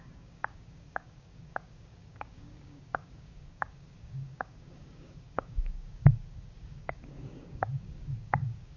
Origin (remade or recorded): remade